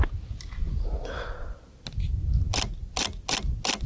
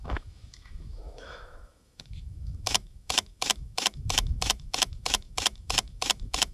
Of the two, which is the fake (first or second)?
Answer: second